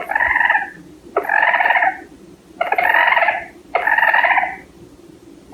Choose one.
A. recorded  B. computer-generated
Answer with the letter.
A